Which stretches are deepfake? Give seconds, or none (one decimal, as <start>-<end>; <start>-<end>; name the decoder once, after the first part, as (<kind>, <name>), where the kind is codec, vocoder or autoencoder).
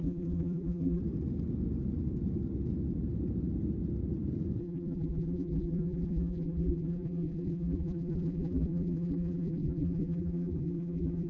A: 0.0-1.0 (vocoder, BigVGAN v2); 4.6-11.3